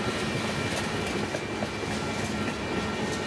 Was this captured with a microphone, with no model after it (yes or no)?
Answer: yes